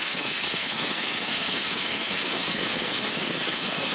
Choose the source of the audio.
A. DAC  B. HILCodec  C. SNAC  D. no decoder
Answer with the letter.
C